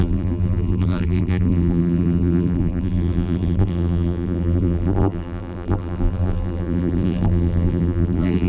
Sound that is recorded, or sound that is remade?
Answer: remade